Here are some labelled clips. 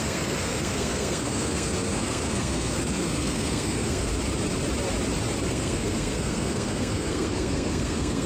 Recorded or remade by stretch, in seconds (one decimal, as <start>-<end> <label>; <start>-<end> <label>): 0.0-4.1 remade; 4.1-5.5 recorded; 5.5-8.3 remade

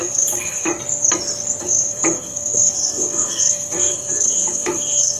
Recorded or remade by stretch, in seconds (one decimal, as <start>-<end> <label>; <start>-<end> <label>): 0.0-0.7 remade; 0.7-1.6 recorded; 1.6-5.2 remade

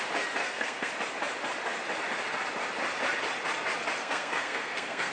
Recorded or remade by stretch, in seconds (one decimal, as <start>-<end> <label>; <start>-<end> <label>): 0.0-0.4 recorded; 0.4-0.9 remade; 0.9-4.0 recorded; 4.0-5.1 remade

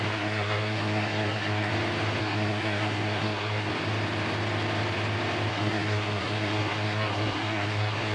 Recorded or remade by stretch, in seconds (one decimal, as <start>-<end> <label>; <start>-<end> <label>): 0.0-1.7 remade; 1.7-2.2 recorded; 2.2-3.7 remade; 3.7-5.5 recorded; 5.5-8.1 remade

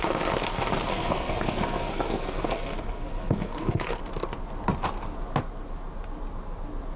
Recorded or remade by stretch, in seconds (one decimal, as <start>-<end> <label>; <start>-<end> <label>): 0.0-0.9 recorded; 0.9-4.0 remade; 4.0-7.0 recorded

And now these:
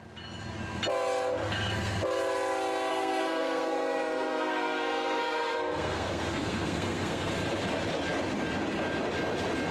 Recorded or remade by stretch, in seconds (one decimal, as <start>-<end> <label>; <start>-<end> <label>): 0.0-1.4 recorded; 1.4-2.0 remade; 2.0-2.9 recorded; 2.9-7.3 remade; 7.3-9.7 recorded

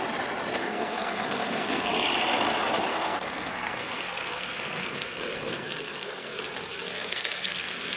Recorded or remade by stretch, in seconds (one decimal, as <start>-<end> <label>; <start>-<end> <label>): 0.0-0.6 recorded; 0.6-1.9 remade; 1.9-2.9 recorded; 2.9-8.0 remade